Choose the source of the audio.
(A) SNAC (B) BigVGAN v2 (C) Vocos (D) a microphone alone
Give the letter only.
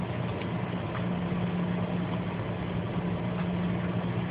D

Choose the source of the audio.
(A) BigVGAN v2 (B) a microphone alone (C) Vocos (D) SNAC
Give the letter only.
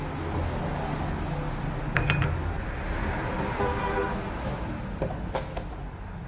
B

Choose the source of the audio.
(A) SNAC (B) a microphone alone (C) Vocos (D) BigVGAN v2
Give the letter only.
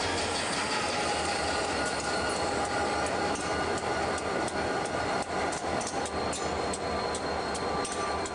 B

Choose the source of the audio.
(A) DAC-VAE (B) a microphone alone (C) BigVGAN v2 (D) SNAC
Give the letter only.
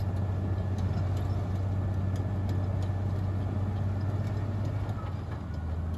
B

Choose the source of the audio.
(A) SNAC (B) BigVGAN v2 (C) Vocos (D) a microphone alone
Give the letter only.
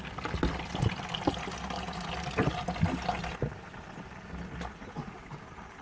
D